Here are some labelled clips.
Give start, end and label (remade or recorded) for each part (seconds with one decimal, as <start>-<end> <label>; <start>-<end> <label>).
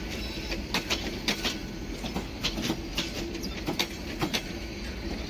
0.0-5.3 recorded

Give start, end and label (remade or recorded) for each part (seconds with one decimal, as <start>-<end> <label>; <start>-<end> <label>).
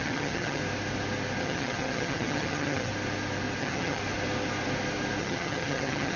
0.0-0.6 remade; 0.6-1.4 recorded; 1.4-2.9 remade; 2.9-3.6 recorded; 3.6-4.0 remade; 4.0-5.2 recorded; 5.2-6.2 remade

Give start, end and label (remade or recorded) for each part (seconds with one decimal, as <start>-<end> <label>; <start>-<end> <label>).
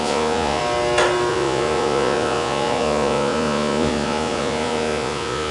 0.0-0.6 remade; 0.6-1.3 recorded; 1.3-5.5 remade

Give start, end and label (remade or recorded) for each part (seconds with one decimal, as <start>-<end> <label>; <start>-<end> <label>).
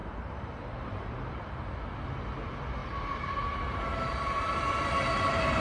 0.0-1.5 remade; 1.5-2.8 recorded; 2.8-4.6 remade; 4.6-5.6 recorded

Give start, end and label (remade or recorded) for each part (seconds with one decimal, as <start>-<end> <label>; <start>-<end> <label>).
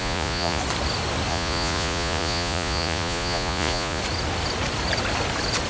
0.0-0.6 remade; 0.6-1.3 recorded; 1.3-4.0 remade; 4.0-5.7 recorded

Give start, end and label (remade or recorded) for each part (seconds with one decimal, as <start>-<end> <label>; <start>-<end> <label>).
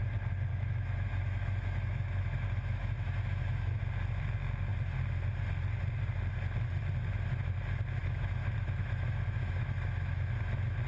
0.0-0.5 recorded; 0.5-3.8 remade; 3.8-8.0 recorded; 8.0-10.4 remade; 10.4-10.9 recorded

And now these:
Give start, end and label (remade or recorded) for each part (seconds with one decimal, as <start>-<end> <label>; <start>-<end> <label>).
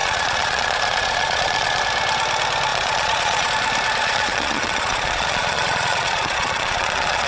0.0-1.8 remade; 1.8-2.7 recorded; 2.7-3.5 remade; 3.5-4.0 recorded; 4.0-7.3 remade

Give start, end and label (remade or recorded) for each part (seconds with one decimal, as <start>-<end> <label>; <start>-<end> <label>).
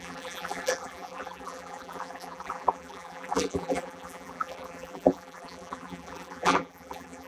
0.0-7.3 remade